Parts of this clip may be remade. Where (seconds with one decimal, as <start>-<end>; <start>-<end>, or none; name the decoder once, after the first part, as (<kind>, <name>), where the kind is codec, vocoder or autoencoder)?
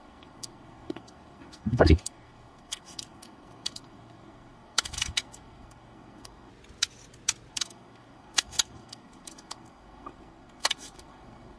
0.0-6.5 (codec, SNAC); 7.5-11.6